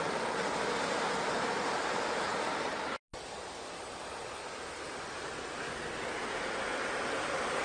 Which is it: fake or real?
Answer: real